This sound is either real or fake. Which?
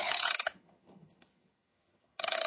fake